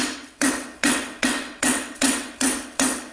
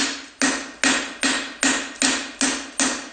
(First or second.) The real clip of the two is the second